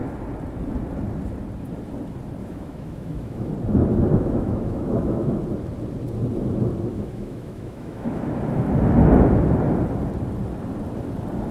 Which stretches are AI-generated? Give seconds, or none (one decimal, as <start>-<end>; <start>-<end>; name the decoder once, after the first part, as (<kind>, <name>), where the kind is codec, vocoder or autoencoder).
2.4-3.5 (autoencoder, DAC-VAE); 4.1-5.4; 6.9-8.2